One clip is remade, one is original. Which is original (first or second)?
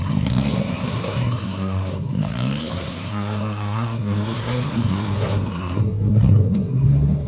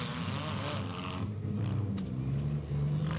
second